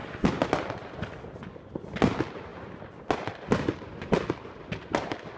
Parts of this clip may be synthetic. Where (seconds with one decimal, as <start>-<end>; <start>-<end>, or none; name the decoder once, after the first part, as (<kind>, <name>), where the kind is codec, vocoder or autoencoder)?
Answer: none